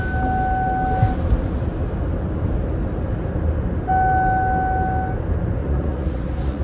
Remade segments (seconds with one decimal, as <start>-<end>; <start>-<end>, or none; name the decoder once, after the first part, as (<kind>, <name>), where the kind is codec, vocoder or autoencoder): 5.6-6.6 (vocoder, Vocos)